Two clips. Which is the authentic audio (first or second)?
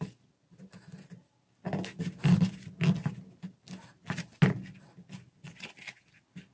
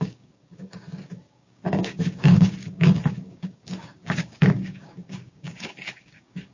first